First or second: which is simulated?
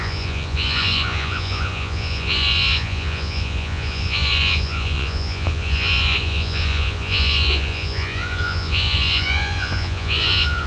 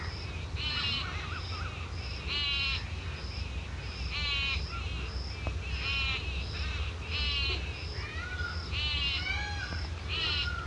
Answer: first